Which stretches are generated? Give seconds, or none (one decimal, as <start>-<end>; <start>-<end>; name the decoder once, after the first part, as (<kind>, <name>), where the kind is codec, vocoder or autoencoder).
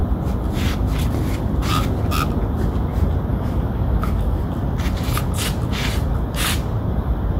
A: 3.3-4.4 (codec, DAC)